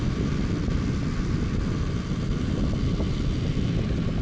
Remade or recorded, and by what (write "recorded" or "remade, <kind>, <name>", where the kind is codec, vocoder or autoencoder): recorded